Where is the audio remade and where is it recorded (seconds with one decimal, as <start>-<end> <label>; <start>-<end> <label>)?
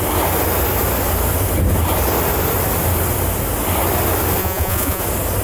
0.0-4.4 recorded; 4.4-5.0 remade; 5.0-5.4 recorded